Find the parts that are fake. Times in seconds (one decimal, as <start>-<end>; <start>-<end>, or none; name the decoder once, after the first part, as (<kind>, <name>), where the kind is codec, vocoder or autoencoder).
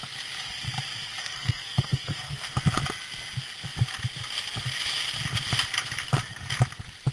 1.2-2.5 (codec, SNAC)